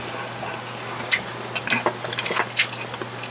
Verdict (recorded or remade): recorded